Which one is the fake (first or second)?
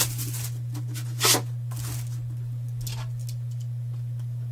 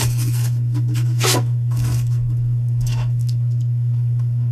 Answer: second